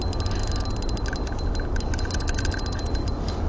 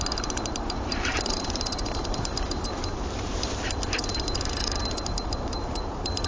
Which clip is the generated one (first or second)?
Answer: second